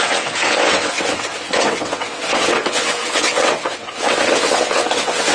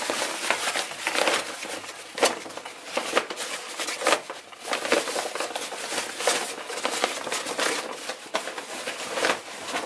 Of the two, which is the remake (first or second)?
first